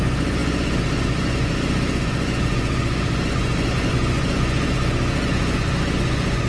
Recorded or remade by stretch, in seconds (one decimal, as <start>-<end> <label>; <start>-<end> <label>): 0.0-6.5 remade